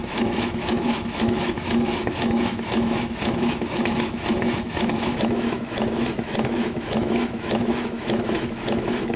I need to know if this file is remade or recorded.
remade